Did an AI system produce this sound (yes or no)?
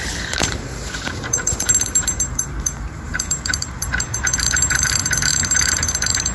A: yes